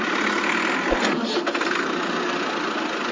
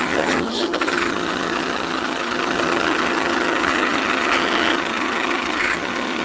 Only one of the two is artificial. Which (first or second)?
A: second